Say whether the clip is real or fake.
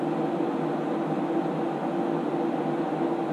real